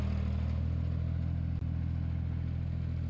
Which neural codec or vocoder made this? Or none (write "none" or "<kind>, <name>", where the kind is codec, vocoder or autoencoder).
none